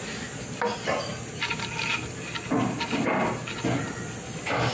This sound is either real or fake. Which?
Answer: real